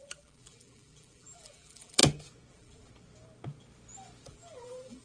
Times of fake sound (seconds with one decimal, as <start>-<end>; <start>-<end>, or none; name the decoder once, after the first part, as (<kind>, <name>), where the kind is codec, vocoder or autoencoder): 0.0-2.0 (vocoder, BigVGAN v2); 2.5-2.9; 4.3-5.0